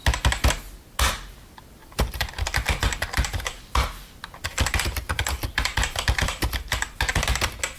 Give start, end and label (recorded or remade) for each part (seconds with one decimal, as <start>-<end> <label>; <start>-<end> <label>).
0.0-1.8 recorded; 1.8-6.5 remade; 6.5-7.8 recorded